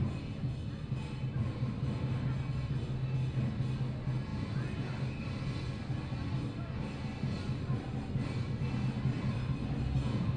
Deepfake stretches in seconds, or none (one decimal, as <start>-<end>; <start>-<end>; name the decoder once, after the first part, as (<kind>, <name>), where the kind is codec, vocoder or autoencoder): none